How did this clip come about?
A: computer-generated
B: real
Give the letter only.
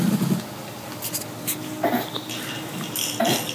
B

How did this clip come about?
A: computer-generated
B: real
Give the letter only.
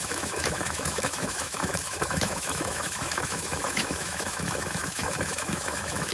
A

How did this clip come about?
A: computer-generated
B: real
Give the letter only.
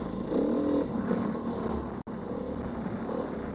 B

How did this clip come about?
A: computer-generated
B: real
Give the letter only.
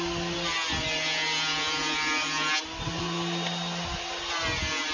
B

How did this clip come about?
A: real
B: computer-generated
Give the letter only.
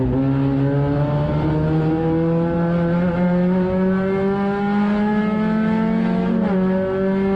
A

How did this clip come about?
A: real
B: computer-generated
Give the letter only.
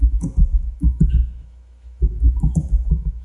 B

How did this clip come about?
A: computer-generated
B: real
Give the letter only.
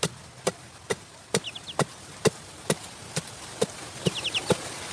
B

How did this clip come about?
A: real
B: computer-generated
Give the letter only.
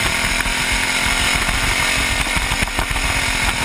A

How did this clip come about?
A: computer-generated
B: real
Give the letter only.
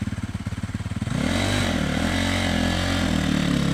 B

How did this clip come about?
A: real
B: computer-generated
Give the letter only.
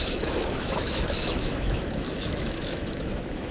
B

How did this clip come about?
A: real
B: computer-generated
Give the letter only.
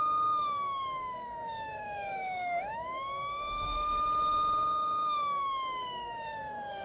B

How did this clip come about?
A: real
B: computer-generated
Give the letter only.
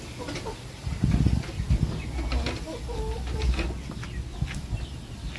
A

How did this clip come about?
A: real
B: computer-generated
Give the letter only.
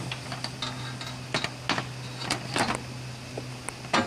A